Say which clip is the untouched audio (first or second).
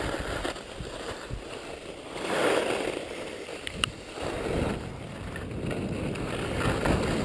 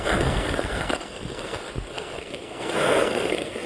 first